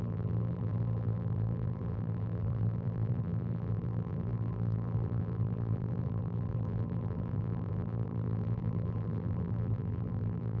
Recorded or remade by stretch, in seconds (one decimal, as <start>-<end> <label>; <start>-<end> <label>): 0.0-10.6 remade